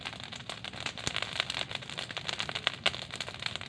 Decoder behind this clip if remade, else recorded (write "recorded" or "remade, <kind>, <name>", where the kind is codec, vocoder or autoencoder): recorded